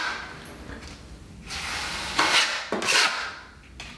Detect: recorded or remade recorded